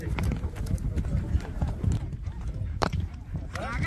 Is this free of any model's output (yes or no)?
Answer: no